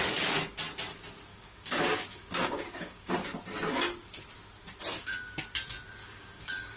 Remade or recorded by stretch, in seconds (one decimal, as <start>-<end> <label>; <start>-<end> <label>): 0.0-1.3 recorded; 1.3-3.1 remade; 3.1-4.9 recorded; 4.9-5.4 remade; 5.4-6.0 recorded; 6.0-6.8 remade